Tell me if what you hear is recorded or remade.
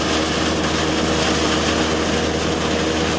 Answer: recorded